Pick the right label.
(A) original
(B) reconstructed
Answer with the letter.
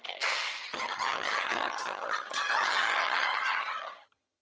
B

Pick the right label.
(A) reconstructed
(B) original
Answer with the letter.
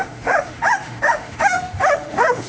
A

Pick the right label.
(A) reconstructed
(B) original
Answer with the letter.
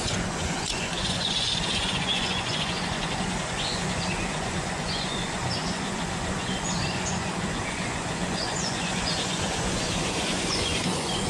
A